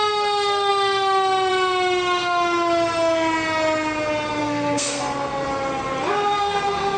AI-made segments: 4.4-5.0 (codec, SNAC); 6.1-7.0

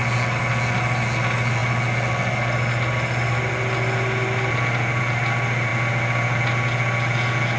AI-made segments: none

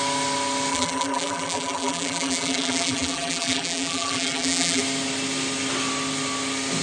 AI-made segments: 0.7-4.8 (vocoder, BigVGAN v2)